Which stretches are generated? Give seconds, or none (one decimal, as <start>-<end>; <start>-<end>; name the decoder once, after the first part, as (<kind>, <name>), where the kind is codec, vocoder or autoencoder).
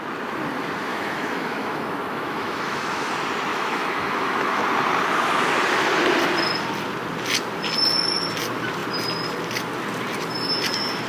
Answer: 0.9-3.1 (autoencoder, DAC-VAE); 3.5-4.6